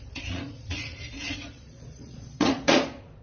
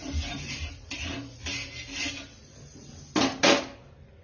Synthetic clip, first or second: first